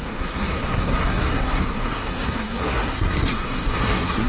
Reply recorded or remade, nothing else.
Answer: remade